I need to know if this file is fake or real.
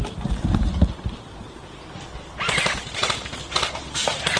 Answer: real